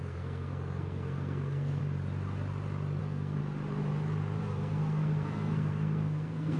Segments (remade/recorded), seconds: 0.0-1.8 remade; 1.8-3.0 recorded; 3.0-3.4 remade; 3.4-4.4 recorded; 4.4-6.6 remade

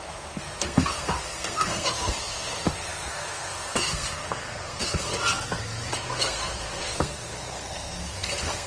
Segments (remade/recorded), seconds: 0.0-5.1 remade; 5.1-5.9 recorded; 5.9-8.7 remade

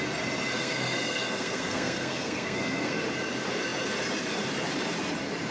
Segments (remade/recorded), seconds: 0.0-0.6 recorded; 0.6-3.0 remade; 3.0-5.5 recorded

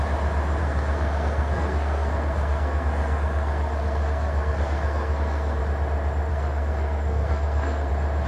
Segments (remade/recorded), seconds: 0.0-0.6 recorded; 0.6-5.6 remade; 5.6-6.3 recorded; 6.3-7.9 remade; 7.9-8.3 recorded

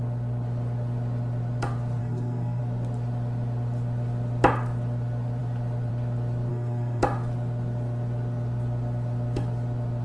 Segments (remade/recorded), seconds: 0.0-2.0 recorded; 2.0-2.6 remade; 2.6-6.5 recorded; 6.5-7.0 remade; 7.0-10.0 recorded

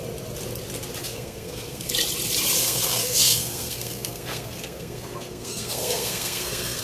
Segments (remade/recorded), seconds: 0.0-1.0 recorded; 1.0-1.9 remade; 1.9-2.6 recorded; 2.6-6.8 remade

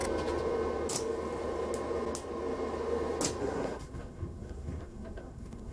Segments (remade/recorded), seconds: 0.0-3.4 recorded; 3.4-5.7 remade

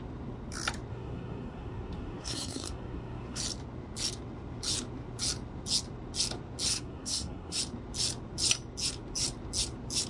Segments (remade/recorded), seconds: 0.0-0.9 recorded; 0.9-3.4 remade; 3.4-6.7 recorded; 6.7-7.6 remade; 7.6-10.1 recorded